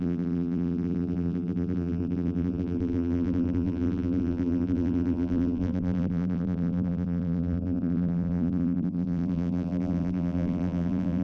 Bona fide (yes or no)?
no